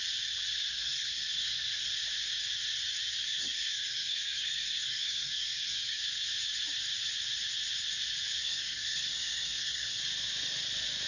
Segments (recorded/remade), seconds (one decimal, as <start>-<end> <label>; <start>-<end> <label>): 0.0-0.6 recorded; 0.6-1.9 remade; 1.9-3.2 recorded; 3.2-6.0 remade; 6.0-8.4 recorded; 8.4-10.0 remade; 10.0-11.1 recorded